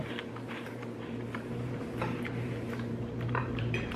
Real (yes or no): no